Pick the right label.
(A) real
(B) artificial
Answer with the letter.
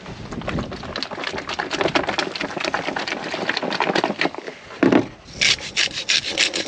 A